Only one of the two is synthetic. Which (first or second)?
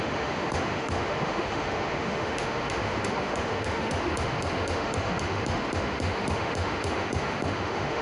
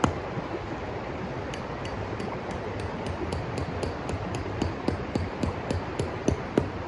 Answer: first